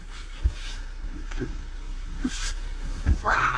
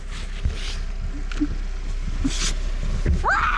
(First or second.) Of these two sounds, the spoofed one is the first